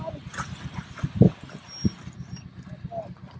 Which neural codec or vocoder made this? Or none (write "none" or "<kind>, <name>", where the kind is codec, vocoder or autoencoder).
none